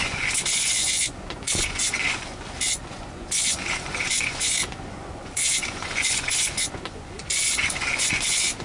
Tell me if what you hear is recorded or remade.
remade